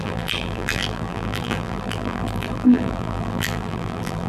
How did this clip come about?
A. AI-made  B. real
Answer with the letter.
A